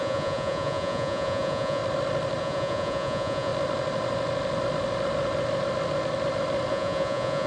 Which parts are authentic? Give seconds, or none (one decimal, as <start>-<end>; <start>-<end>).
1.8-2.4; 3.5-6.7